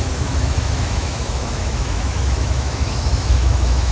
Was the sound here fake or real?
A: fake